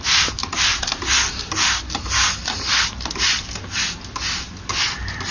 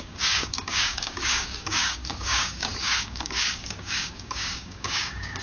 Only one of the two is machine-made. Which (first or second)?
second